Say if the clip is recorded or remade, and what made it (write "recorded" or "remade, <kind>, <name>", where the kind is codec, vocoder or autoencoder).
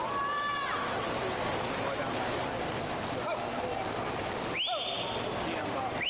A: recorded